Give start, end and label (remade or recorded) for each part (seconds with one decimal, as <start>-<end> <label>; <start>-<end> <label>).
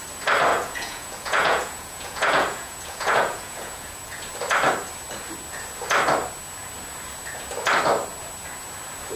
0.0-0.5 recorded; 0.5-4.2 remade; 4.2-9.2 recorded